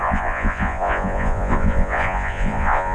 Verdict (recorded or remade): remade